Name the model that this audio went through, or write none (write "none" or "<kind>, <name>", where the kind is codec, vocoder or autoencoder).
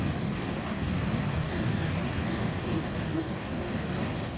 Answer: codec, DAC